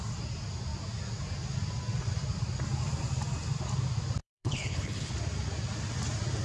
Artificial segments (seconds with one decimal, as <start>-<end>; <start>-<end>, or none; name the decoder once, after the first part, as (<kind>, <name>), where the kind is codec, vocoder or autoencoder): 4.2-5.1 (codec, HILCodec)